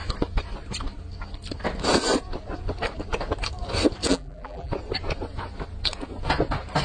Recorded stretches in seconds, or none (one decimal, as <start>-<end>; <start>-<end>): 0.0-4.1; 4.7-6.8